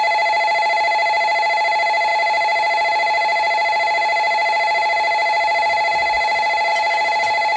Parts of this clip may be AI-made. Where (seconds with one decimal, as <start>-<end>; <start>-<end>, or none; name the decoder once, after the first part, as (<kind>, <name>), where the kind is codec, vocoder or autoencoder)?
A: none